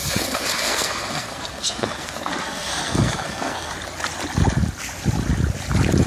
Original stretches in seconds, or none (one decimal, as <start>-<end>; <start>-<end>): 3.7-6.1